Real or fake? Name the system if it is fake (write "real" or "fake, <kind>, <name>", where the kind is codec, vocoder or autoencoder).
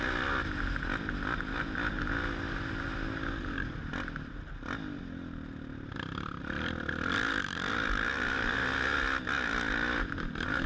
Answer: real